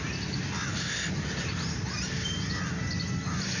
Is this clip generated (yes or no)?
no